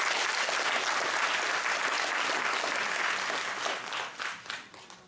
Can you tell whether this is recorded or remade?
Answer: recorded